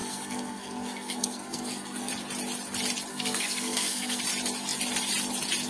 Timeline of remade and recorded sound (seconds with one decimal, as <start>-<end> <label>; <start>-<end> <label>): 0.0-2.1 remade; 2.1-3.1 recorded; 3.1-4.2 remade; 4.2-5.7 recorded